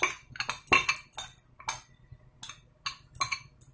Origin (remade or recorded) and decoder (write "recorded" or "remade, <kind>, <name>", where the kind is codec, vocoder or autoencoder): recorded